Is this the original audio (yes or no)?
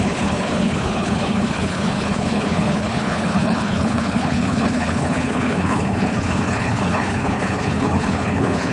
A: no